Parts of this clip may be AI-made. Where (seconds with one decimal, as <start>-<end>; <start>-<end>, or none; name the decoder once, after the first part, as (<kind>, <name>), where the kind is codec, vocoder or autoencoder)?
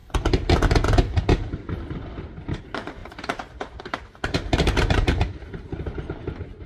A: 2.6-6.7 (vocoder, BigVGAN v2)